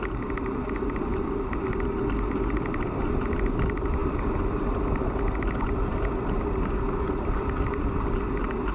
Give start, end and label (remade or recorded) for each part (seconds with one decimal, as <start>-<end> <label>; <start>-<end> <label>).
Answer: 0.0-8.7 recorded